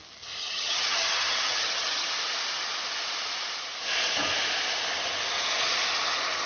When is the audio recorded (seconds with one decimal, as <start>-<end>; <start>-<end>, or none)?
0.0-0.4; 2.1-6.5